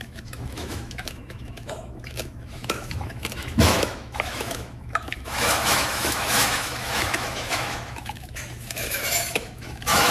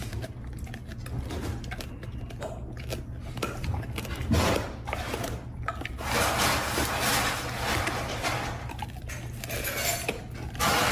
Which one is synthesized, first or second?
first